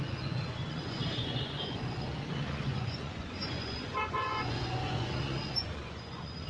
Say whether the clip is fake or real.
fake